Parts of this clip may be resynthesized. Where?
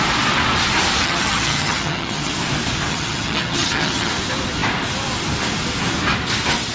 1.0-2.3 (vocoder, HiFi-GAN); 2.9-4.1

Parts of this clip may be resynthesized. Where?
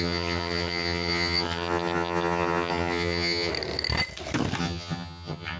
0.0-3.5 (vocoder, HiFi-GAN); 4.6-5.6